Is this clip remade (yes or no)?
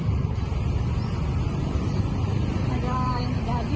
no